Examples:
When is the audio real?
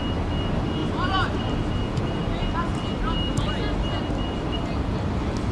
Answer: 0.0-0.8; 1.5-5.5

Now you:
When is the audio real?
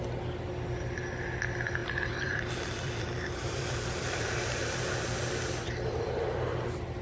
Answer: 0.0-1.8; 6.0-7.0